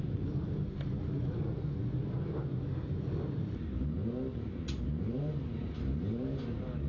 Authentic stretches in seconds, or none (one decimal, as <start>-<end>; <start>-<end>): 0.0-6.9